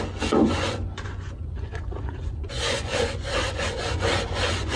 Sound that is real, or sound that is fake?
fake